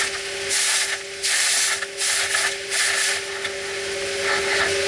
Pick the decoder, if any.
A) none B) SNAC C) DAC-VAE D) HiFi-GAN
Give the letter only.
A